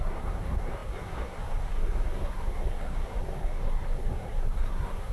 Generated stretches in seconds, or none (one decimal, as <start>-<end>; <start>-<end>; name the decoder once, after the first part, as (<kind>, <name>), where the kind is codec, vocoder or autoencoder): 0.0-5.1 (codec, SNAC)